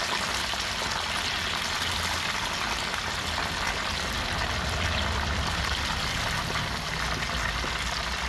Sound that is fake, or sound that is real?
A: real